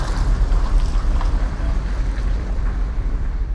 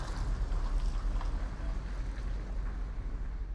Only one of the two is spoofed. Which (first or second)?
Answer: first